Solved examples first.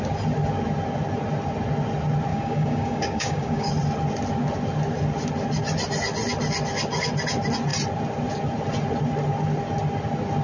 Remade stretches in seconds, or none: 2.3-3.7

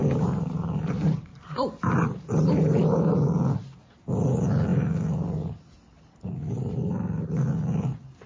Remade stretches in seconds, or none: 0.0-0.8; 1.3-3.1

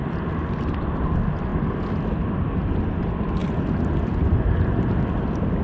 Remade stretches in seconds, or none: none

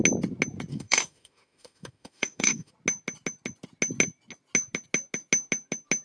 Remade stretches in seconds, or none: 0.7-2.7

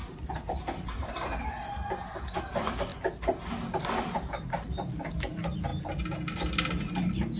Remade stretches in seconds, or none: none